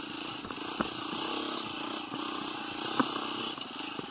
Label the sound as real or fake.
real